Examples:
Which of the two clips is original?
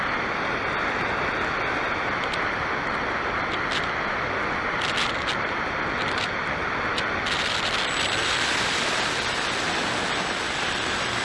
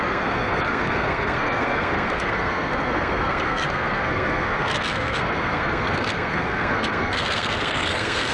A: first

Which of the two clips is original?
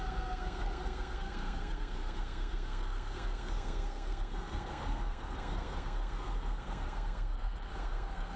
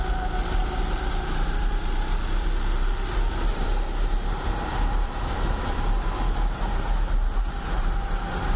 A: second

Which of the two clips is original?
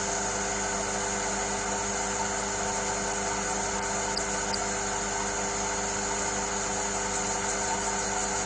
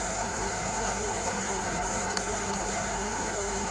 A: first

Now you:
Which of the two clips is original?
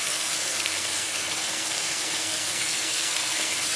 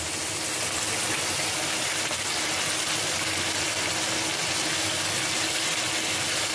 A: second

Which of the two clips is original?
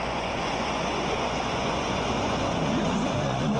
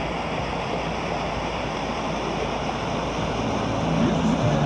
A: second